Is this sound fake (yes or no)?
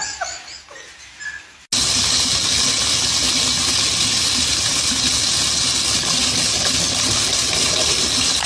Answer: no